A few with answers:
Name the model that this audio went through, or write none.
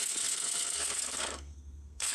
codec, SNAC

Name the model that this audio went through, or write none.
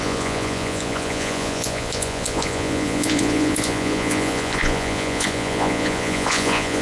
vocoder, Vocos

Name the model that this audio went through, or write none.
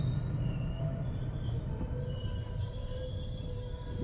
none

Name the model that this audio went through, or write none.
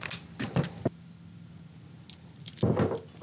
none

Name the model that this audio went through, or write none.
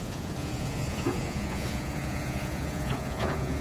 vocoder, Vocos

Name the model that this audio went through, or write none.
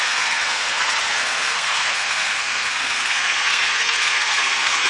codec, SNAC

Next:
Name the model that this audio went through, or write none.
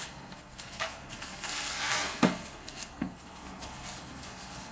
codec, SNAC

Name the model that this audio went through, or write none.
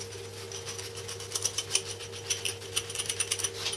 none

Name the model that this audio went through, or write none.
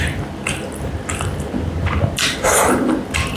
none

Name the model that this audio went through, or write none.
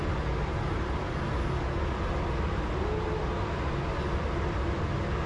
none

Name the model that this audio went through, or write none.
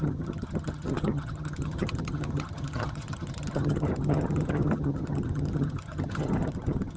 vocoder, HiFi-GAN